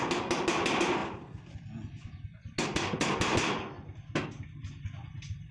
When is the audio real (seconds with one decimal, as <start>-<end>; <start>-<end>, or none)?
0.0-5.5